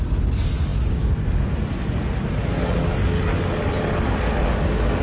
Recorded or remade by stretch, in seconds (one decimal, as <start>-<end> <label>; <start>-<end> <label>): 0.0-5.0 recorded